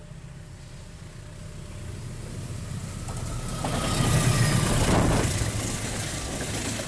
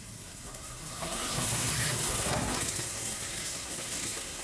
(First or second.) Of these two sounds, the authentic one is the first